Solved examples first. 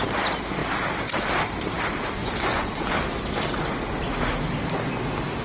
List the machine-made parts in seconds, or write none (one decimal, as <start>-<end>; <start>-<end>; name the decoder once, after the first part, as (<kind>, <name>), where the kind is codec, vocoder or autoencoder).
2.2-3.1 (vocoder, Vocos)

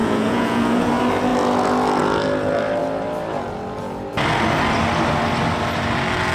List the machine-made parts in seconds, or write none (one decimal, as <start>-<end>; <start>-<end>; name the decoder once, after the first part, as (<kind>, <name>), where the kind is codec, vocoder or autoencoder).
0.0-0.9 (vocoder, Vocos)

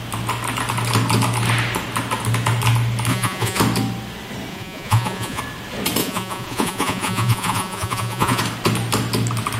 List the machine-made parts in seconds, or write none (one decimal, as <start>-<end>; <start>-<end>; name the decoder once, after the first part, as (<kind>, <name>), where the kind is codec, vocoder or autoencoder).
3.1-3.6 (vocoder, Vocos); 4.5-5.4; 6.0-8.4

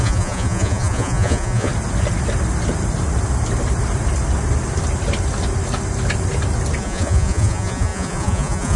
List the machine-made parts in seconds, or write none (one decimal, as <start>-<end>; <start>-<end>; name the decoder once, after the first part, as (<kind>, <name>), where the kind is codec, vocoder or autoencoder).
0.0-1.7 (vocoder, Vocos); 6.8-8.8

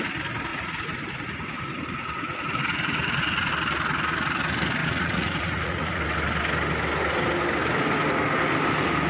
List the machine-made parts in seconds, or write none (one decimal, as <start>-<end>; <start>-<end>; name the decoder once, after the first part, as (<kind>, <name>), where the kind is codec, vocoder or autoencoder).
0.5-3.5 (vocoder, Vocos); 4.8-6.0

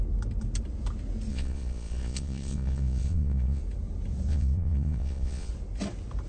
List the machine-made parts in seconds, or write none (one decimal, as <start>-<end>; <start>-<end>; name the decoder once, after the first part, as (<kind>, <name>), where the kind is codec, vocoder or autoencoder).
1.3-3.6 (vocoder, Vocos); 4.3-5.5

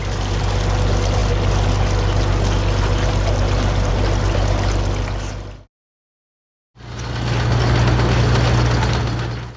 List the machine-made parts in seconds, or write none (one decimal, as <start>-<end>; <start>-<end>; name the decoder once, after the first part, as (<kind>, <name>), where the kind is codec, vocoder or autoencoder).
none

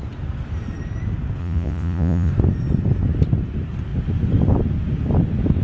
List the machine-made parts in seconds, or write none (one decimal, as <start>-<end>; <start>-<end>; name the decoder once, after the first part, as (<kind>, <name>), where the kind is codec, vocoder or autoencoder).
1.4-2.3 (vocoder, Vocos)